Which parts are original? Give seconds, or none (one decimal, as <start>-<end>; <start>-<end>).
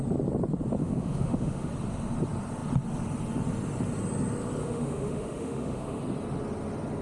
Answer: 0.0-0.8; 1.7-4.6; 6.0-7.0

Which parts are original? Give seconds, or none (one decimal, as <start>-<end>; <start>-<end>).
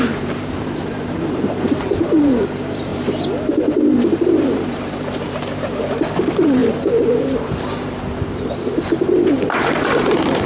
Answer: 2.9-3.5